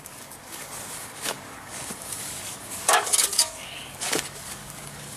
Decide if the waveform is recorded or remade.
remade